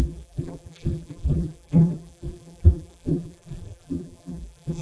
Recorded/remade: remade